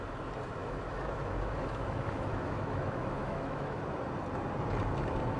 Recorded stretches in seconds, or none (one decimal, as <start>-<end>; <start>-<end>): 0.0-0.6; 3.8-5.4

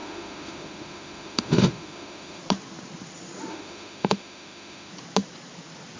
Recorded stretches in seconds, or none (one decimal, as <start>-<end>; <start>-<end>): 2.4-3.5; 4.9-6.0

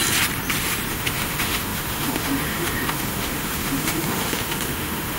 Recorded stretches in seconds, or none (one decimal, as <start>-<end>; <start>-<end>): 0.0-0.9

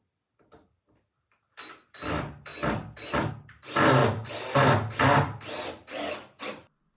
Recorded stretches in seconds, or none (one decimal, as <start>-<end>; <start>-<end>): 0.0-7.0

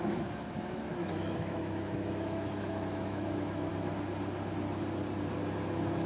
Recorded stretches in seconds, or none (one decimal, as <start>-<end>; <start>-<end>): 3.7-6.1